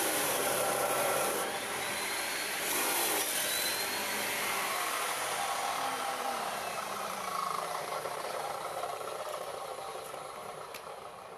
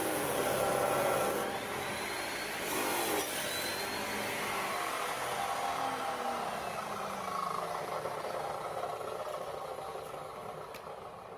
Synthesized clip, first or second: first